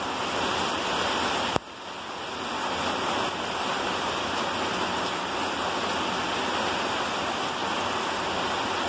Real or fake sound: real